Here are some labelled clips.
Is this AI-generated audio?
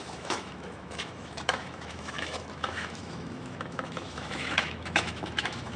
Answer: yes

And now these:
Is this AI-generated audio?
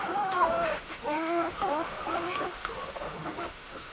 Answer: yes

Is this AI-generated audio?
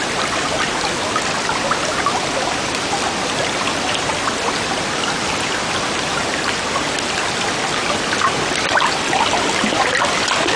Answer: no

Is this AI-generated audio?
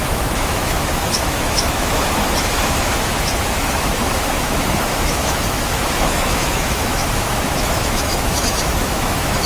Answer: yes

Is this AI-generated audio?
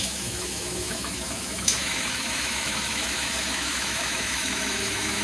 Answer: yes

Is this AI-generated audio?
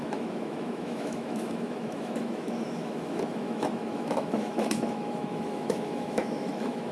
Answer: yes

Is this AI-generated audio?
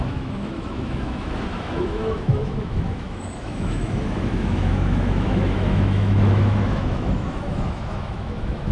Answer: yes